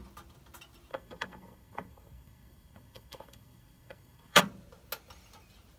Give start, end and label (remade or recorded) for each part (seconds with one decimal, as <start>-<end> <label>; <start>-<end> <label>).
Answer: 0.0-0.9 recorded; 0.9-4.4 remade; 4.4-5.8 recorded